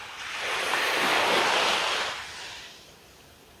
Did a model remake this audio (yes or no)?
no